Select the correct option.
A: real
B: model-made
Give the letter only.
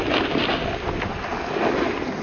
A